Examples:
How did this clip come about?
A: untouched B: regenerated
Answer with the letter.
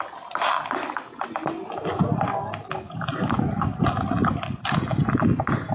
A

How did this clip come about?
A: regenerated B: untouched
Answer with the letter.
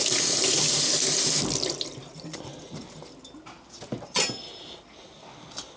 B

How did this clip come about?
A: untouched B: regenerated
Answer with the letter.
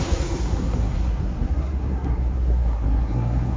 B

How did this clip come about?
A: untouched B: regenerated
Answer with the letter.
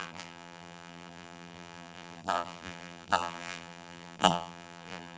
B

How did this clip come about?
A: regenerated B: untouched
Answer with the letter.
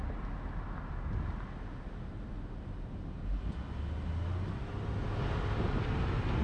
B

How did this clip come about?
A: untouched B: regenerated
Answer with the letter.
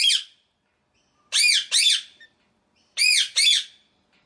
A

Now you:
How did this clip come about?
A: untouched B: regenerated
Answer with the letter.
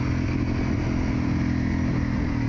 A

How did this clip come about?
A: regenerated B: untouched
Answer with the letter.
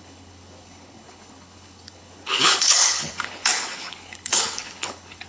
A